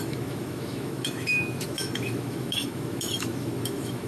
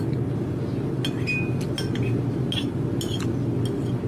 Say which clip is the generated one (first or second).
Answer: first